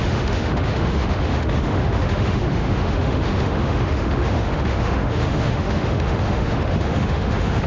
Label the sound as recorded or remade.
remade